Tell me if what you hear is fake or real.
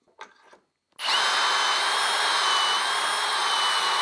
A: real